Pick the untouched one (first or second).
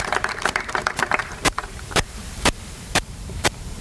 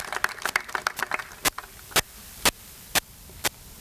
second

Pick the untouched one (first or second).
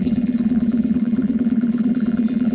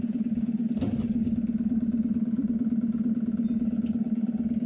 second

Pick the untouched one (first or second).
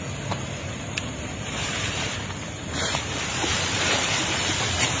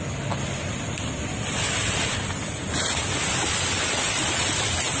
second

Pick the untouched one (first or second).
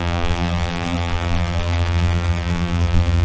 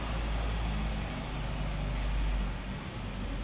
second